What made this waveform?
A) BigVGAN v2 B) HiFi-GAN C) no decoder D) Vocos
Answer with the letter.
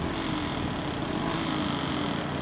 C